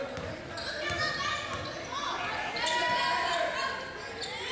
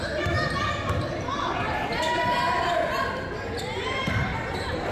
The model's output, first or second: second